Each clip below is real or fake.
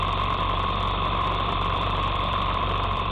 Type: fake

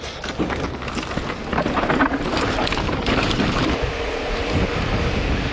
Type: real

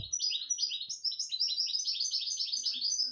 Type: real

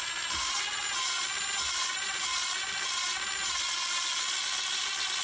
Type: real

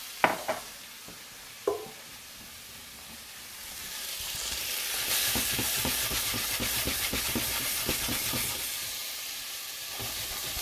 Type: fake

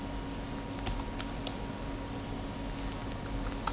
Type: real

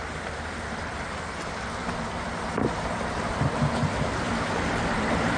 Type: fake